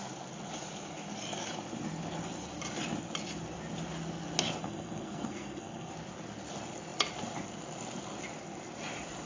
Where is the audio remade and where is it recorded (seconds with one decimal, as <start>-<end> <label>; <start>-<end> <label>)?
0.0-4.6 recorded; 4.6-5.9 remade; 5.9-9.3 recorded